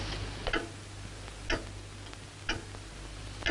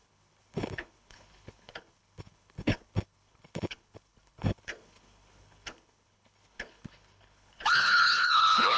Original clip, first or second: first